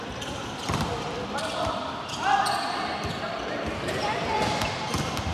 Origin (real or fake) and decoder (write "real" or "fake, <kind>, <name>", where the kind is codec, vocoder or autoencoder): fake, vocoder, BigVGAN v2